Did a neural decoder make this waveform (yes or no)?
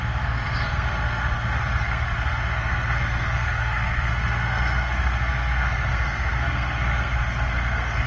yes